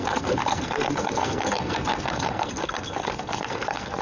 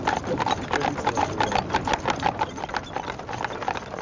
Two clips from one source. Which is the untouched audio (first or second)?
second